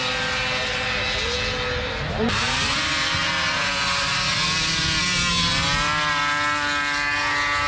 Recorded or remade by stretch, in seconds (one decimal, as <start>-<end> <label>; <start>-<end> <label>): 0.0-7.7 recorded